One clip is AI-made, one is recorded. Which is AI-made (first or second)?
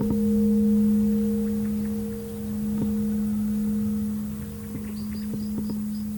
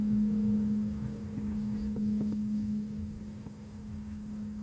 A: second